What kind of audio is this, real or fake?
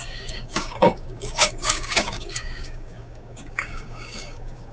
fake